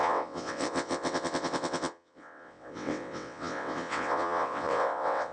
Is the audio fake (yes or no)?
yes